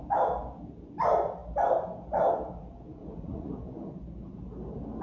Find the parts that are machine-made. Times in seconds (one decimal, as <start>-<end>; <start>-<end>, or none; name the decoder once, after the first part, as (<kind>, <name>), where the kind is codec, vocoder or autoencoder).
3.0-3.5 (vocoder, Vocos)